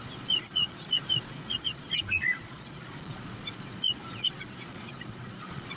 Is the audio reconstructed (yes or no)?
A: yes